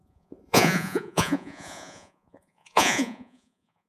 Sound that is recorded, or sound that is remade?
remade